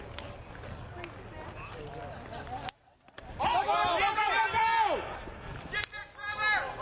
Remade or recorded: recorded